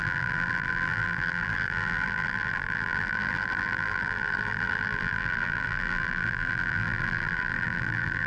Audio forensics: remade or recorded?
remade